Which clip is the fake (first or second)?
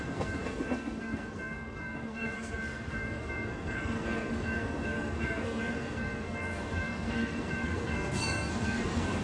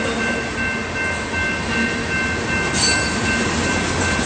first